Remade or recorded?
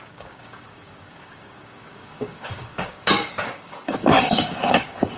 remade